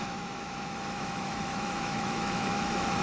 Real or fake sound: fake